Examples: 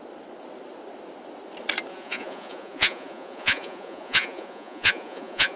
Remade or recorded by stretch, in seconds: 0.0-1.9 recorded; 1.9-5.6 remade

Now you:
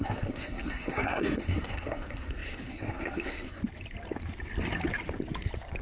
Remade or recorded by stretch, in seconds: 0.0-3.6 remade; 3.6-5.8 recorded

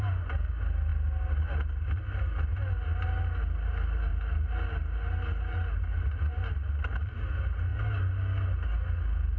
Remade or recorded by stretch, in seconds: 0.0-9.4 recorded

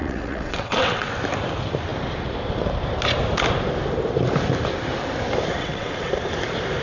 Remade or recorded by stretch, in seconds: 0.0-1.1 remade; 1.1-5.6 recorded; 5.6-6.1 remade; 6.1-6.8 recorded

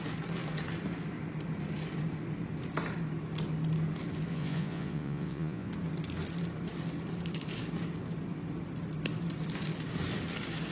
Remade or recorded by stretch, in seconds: 0.0-4.3 recorded; 4.3-5.7 remade; 5.7-10.7 recorded

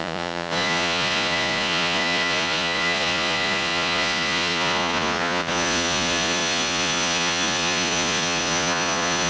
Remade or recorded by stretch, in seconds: 0.0-9.3 remade